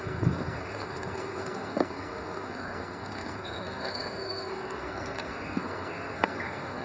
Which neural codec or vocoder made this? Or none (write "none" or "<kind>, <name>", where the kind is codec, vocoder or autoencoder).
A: codec, SNAC